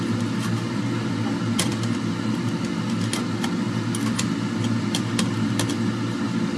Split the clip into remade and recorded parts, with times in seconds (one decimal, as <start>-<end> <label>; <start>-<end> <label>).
0.0-6.6 recorded